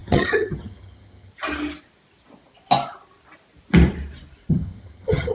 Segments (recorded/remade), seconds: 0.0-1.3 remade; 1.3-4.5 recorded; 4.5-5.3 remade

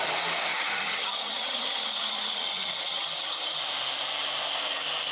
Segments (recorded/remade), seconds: 0.0-0.5 recorded; 0.5-3.6 remade; 3.6-5.1 recorded

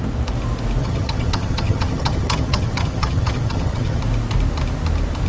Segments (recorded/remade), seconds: 0.0-0.8 recorded; 0.8-4.0 remade; 4.0-5.3 recorded

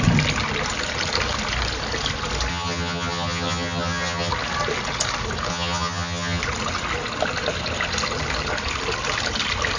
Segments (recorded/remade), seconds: 0.0-2.5 recorded; 2.5-4.3 remade; 4.3-5.5 recorded; 5.5-6.4 remade; 6.4-9.8 recorded

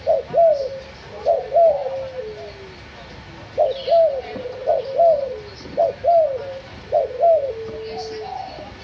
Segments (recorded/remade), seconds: 0.0-8.8 recorded

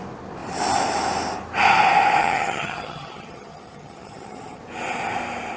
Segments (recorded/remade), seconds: 0.0-2.2 recorded; 2.2-4.6 remade; 4.6-5.6 recorded